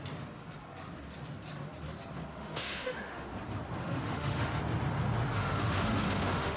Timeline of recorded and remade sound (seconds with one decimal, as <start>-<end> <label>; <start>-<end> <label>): 0.0-2.3 recorded; 2.3-3.3 remade; 3.3-3.8 recorded; 3.8-4.6 remade; 4.6-5.4 recorded; 5.4-6.6 remade

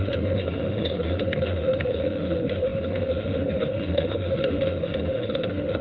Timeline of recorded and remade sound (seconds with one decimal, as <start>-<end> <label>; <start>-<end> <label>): 0.0-5.8 remade

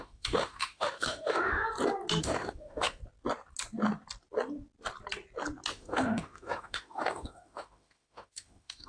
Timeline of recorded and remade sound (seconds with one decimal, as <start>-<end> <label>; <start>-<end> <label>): 0.0-1.6 remade; 1.6-2.2 recorded; 2.2-3.0 remade; 3.0-5.7 recorded; 5.7-8.9 remade

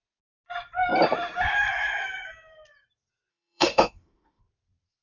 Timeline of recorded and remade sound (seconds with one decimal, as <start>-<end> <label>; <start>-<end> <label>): 0.0-3.3 recorded; 3.3-4.4 remade; 4.4-5.0 recorded

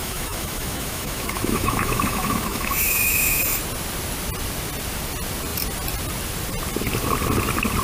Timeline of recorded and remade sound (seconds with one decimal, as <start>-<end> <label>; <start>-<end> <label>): 0.0-3.4 remade; 3.4-7.8 recorded

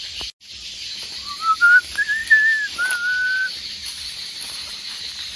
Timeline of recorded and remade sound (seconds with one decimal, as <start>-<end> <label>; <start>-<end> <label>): 0.0-5.4 recorded

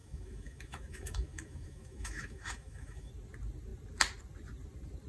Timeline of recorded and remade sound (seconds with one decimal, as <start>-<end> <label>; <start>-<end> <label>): 0.0-3.1 remade; 3.1-5.1 recorded